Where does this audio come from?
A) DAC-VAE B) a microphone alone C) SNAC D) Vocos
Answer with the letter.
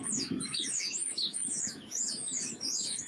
A